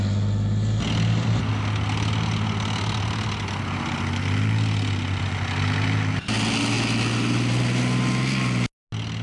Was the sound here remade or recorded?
recorded